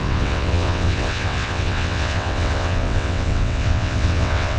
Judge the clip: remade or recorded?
remade